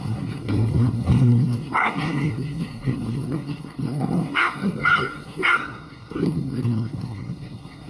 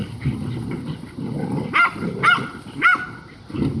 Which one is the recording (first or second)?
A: second